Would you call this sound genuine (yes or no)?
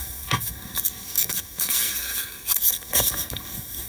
no